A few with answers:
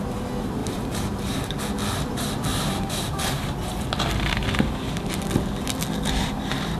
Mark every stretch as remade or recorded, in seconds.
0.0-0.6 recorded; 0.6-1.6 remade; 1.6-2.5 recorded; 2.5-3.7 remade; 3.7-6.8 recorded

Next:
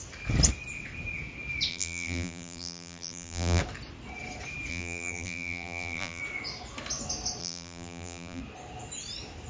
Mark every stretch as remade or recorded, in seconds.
0.0-1.7 recorded; 1.7-3.6 remade; 3.6-4.7 recorded; 4.7-6.2 remade; 6.2-7.4 recorded; 7.4-8.4 remade; 8.4-9.5 recorded

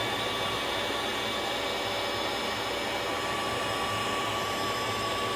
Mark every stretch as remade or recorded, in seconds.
0.0-1.1 remade; 1.1-3.1 recorded; 3.1-5.4 remade

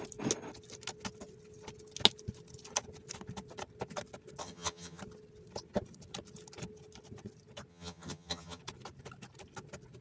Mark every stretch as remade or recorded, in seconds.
0.0-4.4 recorded; 4.4-5.0 remade; 5.0-7.7 recorded; 7.7-8.6 remade; 8.6-10.0 recorded

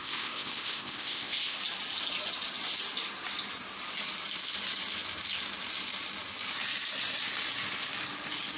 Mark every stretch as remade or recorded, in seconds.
0.0-1.6 remade; 1.6-8.6 recorded